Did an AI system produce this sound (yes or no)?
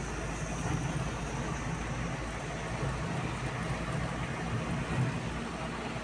no